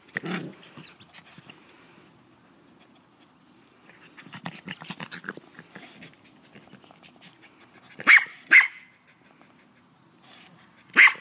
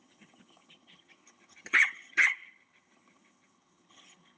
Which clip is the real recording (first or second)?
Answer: first